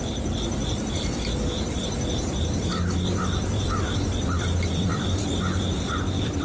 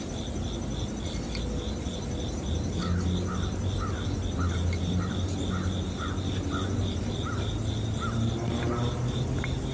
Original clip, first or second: second